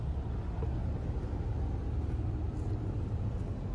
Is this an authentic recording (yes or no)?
yes